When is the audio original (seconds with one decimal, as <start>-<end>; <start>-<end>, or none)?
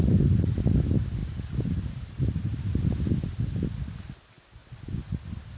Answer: 0.0-5.6